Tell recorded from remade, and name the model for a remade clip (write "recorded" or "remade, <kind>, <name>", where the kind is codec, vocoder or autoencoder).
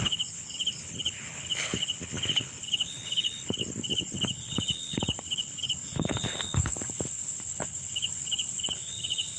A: remade, codec, HILCodec